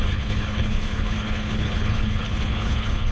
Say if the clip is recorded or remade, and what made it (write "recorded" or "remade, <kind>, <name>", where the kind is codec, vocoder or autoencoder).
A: remade, codec, HILCodec